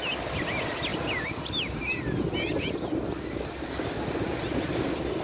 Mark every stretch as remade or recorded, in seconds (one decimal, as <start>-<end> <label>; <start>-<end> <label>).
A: 0.0-0.9 recorded; 0.9-2.0 remade; 2.0-5.2 recorded